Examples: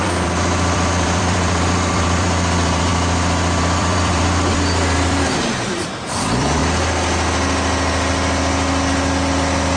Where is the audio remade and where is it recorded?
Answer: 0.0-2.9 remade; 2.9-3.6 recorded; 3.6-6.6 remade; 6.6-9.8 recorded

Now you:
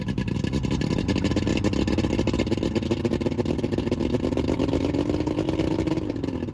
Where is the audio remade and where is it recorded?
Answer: 0.0-1.5 remade; 1.5-3.1 recorded; 3.1-6.5 remade